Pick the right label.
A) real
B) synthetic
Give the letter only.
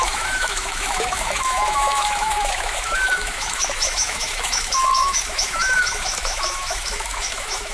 B